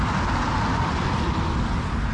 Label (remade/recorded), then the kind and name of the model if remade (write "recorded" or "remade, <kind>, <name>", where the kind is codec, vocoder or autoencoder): recorded